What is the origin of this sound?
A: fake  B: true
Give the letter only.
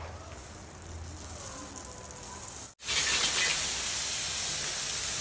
B